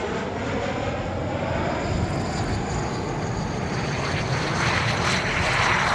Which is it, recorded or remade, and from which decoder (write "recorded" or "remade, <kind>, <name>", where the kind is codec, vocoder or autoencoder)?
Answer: recorded